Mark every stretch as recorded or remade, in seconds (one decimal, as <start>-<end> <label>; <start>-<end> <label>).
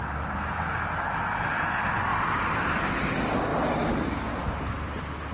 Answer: 0.0-2.1 recorded; 2.1-2.7 remade; 2.7-5.3 recorded